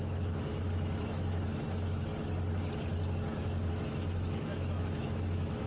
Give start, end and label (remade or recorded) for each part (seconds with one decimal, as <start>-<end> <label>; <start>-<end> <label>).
0.0-2.1 remade; 2.1-3.7 recorded; 3.7-5.7 remade